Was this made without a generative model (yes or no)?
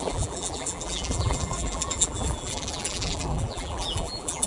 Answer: no